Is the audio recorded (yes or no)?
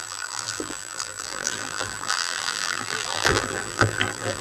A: no